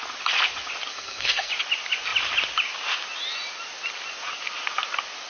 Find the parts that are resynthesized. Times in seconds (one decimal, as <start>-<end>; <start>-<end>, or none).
0.9-1.5